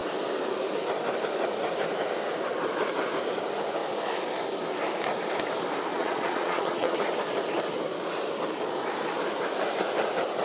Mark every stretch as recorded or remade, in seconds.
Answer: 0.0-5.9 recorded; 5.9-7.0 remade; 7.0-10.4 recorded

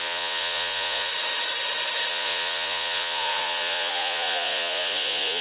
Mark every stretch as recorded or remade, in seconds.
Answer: 0.0-1.1 remade; 1.1-2.1 recorded; 2.1-5.4 remade

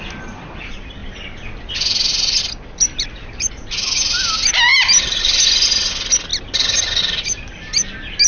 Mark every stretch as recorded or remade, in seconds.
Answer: 0.0-8.3 recorded

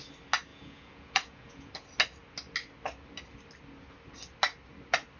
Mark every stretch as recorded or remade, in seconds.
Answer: 0.0-0.5 recorded; 0.5-1.7 remade; 1.7-5.2 recorded

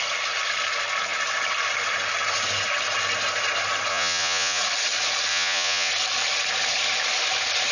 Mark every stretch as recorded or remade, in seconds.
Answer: 0.0-3.9 recorded; 3.9-4.6 remade; 4.6-5.3 recorded; 5.3-5.9 remade; 5.9-7.7 recorded

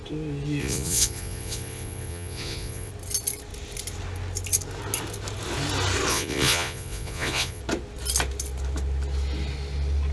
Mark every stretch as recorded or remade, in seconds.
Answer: 0.0-0.6 recorded; 0.6-2.9 remade; 2.9-6.1 recorded; 6.1-7.6 remade; 7.6-10.1 recorded

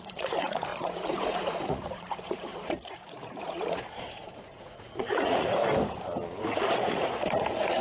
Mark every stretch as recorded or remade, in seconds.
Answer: 0.0-5.6 remade; 5.6-6.4 recorded; 6.4-7.8 remade

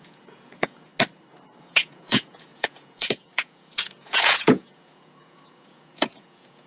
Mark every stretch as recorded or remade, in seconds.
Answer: 0.0-0.9 remade; 0.9-1.6 recorded; 1.6-6.7 remade